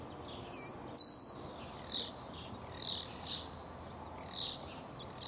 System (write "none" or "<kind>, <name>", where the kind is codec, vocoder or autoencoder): none